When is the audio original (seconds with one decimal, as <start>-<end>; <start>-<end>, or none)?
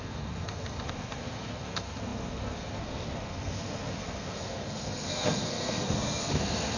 none